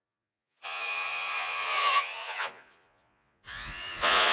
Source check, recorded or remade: remade